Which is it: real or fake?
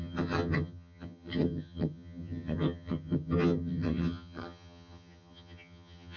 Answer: fake